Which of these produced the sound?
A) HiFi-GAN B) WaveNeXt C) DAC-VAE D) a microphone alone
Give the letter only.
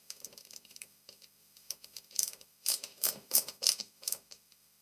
C